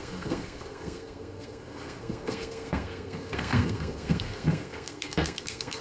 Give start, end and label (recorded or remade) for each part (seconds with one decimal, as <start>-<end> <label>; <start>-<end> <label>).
0.0-5.8 remade